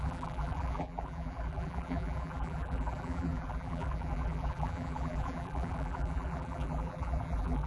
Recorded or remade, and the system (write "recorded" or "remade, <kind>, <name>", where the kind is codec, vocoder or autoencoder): remade, vocoder, BigVGAN v2